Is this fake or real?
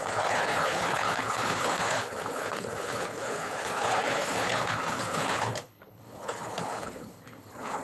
fake